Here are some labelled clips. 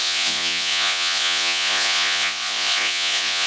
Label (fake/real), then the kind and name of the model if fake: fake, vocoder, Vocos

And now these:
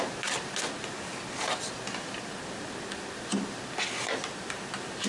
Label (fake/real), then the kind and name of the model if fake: real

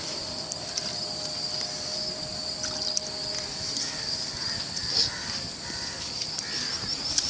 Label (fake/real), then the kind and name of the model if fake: real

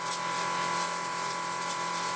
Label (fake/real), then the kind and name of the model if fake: real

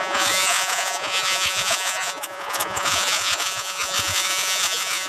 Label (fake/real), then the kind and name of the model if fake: fake, vocoder, Vocos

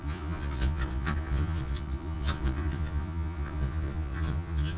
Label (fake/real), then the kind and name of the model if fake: fake, vocoder, Vocos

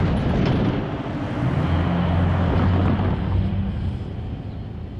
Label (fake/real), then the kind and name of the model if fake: real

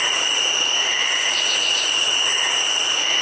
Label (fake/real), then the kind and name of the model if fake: fake, vocoder, Vocos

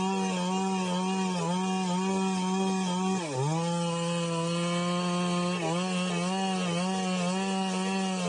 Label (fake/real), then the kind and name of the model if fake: real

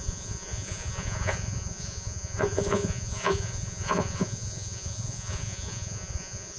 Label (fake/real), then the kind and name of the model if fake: fake, vocoder, Vocos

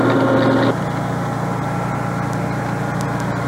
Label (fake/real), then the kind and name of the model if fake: real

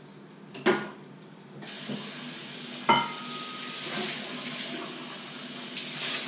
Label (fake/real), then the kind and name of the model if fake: real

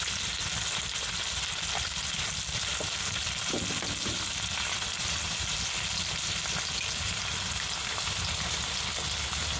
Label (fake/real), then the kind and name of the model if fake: real